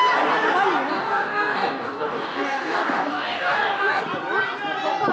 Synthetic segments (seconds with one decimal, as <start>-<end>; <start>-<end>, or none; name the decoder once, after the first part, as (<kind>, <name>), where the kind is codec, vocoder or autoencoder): 0.9-4.0 (codec, DAC)